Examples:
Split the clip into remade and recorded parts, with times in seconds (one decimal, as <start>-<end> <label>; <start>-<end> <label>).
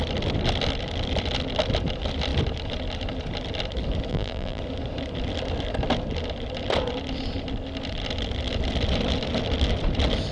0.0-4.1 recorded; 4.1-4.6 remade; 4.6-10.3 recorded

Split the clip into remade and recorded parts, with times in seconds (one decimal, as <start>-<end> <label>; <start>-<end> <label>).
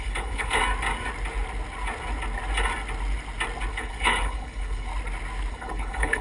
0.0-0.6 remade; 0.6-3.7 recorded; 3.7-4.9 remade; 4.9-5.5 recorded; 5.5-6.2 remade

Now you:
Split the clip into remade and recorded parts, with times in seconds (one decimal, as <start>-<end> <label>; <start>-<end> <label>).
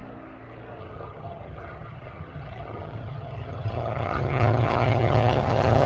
0.0-0.8 recorded; 0.8-5.9 remade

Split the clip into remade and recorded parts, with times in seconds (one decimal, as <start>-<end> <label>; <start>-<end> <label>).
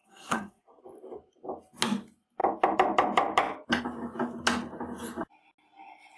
0.0-0.8 remade; 0.8-6.2 recorded